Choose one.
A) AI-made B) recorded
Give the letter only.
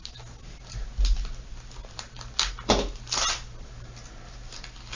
B